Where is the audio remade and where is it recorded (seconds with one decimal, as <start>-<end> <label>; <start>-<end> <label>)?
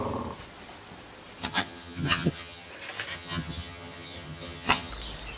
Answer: 0.0-1.4 recorded; 1.4-2.7 remade; 2.7-3.1 recorded; 3.1-4.9 remade; 4.9-5.4 recorded